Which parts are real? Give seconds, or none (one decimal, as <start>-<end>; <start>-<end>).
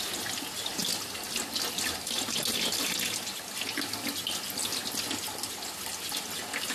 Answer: 0.0-6.7